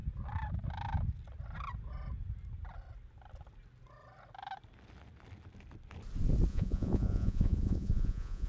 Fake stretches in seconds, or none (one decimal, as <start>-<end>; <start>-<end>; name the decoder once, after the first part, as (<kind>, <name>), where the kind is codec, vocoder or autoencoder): 6.5-8.5 (vocoder, Vocos)